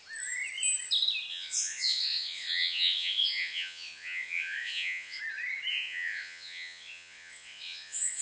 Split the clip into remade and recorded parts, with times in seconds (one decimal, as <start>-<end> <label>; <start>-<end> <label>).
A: 0.0-1.3 recorded; 1.3-5.2 remade; 5.2-5.7 recorded; 5.7-8.2 remade